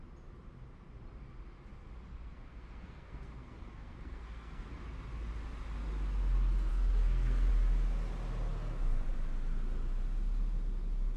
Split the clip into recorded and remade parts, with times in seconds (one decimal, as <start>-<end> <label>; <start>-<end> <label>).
0.0-2.1 recorded; 2.1-4.8 remade; 4.8-6.7 recorded; 6.7-7.5 remade; 7.5-11.2 recorded